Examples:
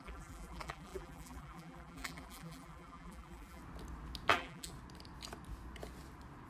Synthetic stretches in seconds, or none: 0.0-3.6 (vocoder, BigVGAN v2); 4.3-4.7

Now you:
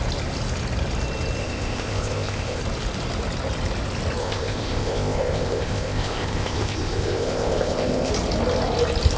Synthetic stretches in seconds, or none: 1.4-2.6 (codec, ZipCodec); 4.2-8.1

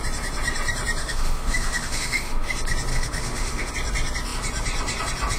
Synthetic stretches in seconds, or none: 1.0-2.5 (autoencoder, DAC-VAE); 2.9-3.7